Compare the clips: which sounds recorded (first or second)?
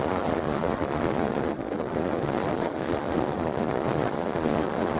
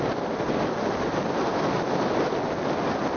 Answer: second